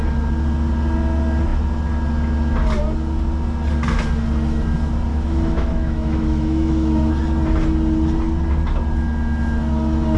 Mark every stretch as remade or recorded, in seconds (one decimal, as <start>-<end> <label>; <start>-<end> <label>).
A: 0.0-5.1 recorded; 5.1-7.1 remade; 7.1-10.2 recorded